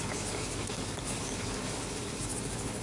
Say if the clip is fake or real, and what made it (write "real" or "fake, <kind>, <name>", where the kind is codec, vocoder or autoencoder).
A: fake, codec, DAC